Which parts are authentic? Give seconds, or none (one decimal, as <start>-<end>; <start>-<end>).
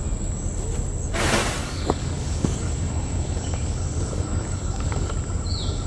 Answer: 0.0-1.6; 5.1-5.9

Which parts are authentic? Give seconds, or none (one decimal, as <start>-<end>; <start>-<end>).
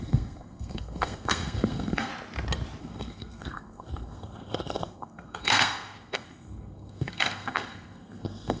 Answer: 2.1-2.8